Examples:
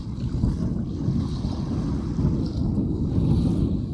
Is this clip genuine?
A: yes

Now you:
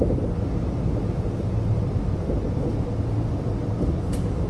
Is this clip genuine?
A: yes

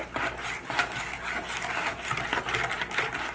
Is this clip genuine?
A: yes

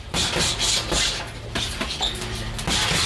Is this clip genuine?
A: yes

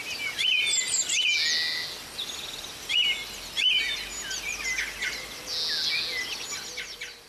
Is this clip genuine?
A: yes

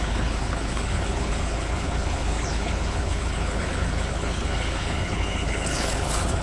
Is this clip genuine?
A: no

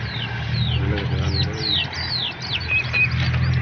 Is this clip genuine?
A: yes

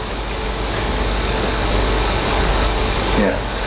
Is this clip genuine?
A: no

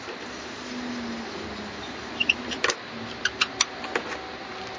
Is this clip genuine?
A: yes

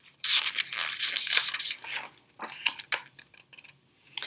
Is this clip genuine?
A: yes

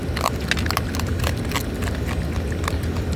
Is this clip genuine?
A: yes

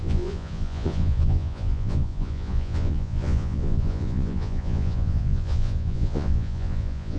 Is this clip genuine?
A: no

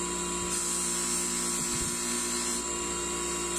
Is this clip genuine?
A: yes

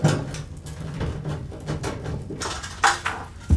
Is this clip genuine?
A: yes